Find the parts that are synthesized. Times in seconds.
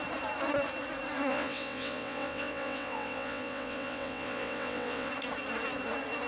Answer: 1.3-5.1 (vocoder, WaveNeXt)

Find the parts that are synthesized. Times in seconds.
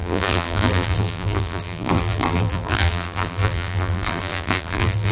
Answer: 0.0-5.1 (vocoder, BigVGAN v2)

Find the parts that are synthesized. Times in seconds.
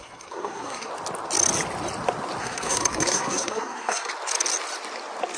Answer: 0.0-0.9 (codec, SNAC); 2.4-4.1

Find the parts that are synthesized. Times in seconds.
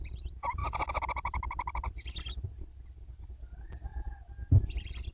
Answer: none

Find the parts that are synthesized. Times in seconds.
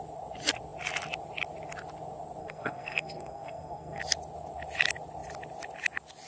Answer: 2.4-4.0 (codec, SNAC)